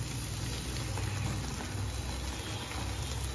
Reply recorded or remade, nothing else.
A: recorded